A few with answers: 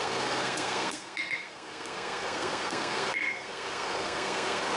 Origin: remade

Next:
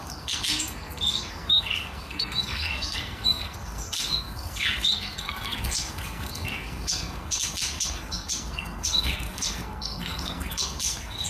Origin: remade